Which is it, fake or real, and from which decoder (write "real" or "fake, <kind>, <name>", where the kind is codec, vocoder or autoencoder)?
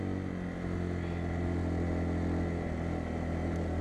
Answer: real